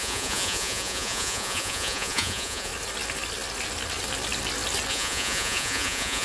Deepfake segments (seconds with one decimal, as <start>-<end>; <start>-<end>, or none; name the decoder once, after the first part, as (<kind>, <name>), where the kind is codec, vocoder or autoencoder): 0.0-2.7 (vocoder, Vocos); 4.9-6.2